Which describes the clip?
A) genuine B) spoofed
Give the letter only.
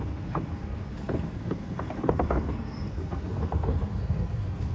B